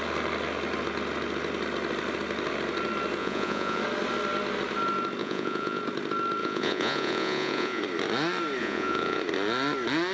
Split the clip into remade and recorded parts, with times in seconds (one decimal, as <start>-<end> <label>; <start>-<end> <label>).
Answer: 0.0-3.2 recorded; 3.2-3.8 remade; 3.8-5.2 recorded; 5.2-5.8 remade; 5.8-6.4 recorded; 6.4-7.8 remade; 7.8-8.6 recorded; 8.6-9.2 remade; 9.2-10.1 recorded